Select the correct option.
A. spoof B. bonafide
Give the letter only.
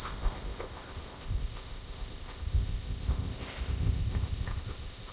A